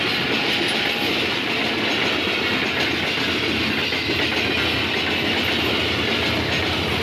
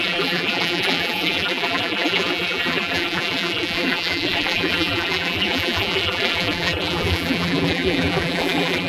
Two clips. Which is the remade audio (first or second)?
second